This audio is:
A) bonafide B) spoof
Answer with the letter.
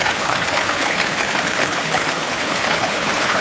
B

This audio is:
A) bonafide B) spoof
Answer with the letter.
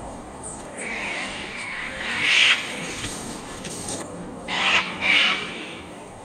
B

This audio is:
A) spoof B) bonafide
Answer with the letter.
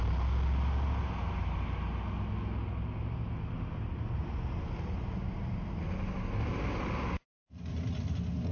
B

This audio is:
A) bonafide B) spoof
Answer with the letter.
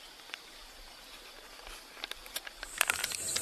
A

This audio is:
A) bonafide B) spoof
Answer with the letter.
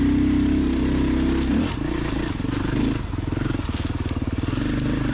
A